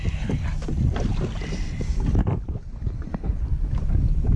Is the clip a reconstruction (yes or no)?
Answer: no